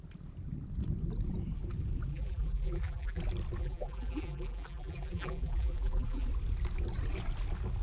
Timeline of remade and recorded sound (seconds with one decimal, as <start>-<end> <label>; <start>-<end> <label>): 0.0-2.1 recorded; 2.1-3.2 remade; 3.2-3.6 recorded; 3.6-6.3 remade; 6.3-7.8 recorded

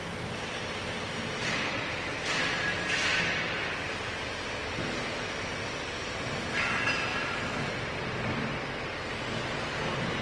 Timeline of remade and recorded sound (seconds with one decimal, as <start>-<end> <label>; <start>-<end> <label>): 0.0-10.2 recorded

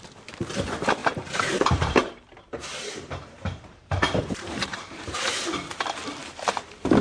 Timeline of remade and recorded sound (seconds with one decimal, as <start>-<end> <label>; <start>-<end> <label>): 0.0-1.0 recorded; 1.0-5.2 remade; 5.2-6.2 recorded; 6.2-7.0 remade

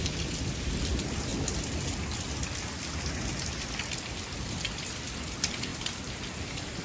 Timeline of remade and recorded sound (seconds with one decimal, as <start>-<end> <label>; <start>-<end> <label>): 0.0-1.3 remade; 1.3-3.6 recorded; 3.6-6.8 remade